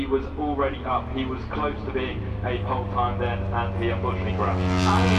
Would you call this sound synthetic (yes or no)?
no